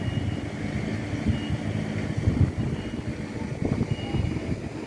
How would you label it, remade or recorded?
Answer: recorded